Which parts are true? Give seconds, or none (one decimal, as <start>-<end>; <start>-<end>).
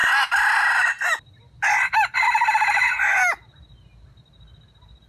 0.0-5.1